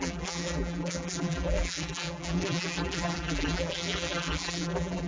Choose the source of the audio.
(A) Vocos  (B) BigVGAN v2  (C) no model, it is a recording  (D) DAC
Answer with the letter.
B